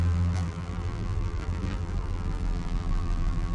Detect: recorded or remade remade